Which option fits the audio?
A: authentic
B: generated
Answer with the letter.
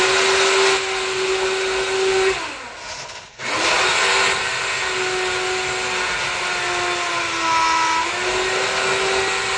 A